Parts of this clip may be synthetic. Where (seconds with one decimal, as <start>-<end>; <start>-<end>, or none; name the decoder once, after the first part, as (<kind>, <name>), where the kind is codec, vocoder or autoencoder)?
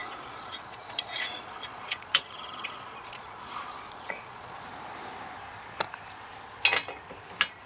0.0-4.6 (vocoder, Vocos)